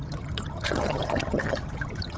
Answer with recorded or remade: remade